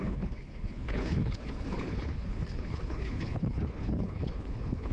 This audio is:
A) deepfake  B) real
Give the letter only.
A